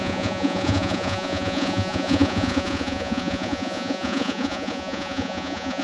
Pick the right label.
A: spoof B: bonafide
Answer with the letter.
A